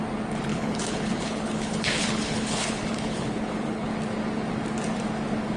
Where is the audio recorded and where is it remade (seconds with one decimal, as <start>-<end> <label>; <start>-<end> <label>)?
0.0-0.5 recorded; 0.5-3.9 remade; 3.9-5.6 recorded